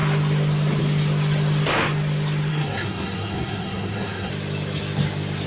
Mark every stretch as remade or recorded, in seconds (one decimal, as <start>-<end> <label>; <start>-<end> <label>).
0.0-2.5 recorded; 2.5-4.3 remade; 4.3-5.5 recorded

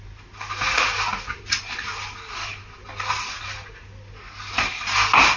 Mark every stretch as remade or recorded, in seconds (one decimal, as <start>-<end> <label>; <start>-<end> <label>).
0.0-5.4 recorded

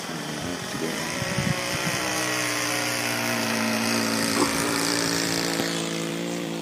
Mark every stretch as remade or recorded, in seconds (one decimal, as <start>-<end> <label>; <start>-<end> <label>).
0.0-0.5 remade; 0.5-1.0 recorded; 1.0-6.6 remade